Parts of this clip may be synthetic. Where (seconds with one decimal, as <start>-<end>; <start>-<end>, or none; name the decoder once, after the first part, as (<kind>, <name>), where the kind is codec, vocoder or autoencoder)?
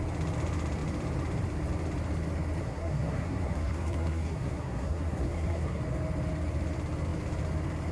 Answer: 2.6-5.8 (codec, SNAC)